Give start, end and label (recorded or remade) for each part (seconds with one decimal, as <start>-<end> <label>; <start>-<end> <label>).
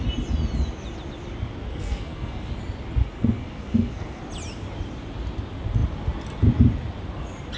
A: 0.0-1.7 recorded; 1.7-2.5 remade; 2.5-3.0 recorded; 3.0-4.2 remade; 4.2-7.6 recorded